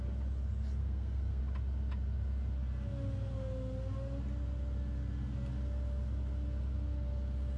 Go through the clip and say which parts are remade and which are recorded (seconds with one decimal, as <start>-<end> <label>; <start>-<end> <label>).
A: 0.0-0.8 recorded; 0.8-1.4 remade; 1.4-7.6 recorded